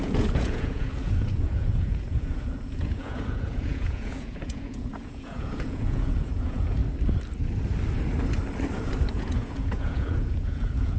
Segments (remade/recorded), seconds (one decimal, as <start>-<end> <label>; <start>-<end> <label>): 0.0-6.8 remade; 6.8-9.1 recorded; 9.1-11.0 remade